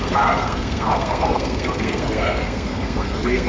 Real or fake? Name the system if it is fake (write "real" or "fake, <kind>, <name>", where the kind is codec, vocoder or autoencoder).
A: fake, codec, SNAC